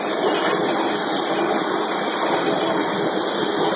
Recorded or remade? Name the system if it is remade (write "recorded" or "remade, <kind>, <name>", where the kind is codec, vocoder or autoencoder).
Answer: remade, vocoder, BigVGAN v2